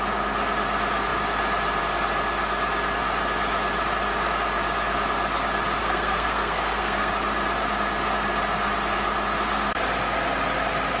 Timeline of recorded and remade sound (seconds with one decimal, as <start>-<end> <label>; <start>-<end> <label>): 0.0-5.8 recorded; 5.8-7.1 remade; 7.1-11.0 recorded